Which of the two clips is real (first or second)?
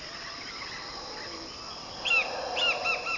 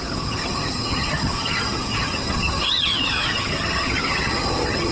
first